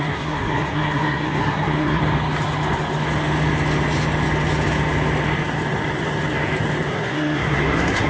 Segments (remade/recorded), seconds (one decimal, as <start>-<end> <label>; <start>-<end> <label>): 0.0-2.0 remade; 2.0-6.9 recorded; 6.9-8.1 remade